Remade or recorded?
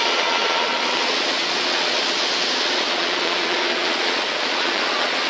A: remade